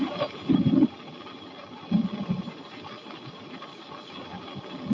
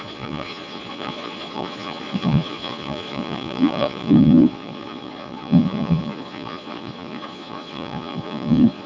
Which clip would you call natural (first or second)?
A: first